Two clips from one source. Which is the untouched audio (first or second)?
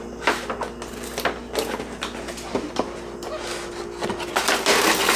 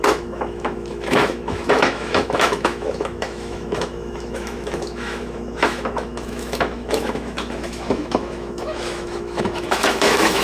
first